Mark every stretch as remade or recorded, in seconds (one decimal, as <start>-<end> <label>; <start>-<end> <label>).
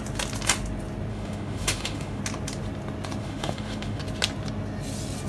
0.0-1.1 recorded; 1.1-2.2 remade; 2.2-3.2 recorded; 3.2-4.0 remade; 4.0-5.3 recorded